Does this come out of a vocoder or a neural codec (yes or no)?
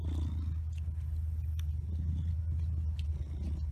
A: no